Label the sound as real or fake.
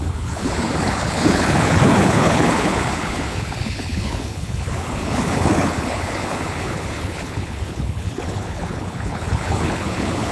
fake